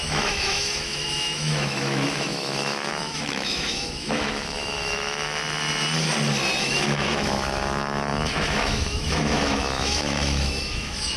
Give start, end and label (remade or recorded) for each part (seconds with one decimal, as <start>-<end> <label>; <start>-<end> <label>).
0.0-5.4 remade; 5.4-6.6 recorded; 6.6-11.2 remade